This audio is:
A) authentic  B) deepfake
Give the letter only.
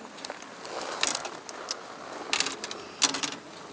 A